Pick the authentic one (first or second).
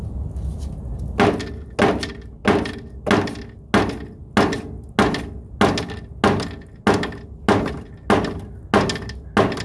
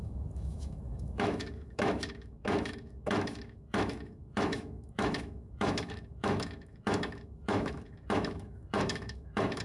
first